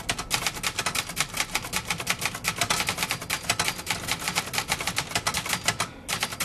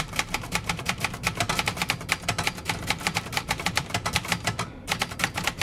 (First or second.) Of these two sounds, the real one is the first